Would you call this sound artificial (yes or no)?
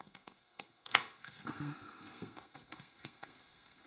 yes